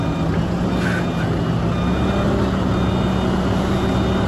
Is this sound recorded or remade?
recorded